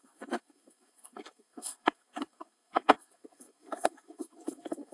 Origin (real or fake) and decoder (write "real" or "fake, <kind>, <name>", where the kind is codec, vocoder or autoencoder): fake, codec, SNAC